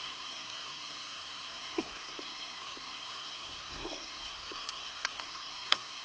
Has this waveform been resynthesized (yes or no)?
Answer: yes